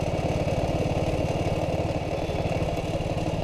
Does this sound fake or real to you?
real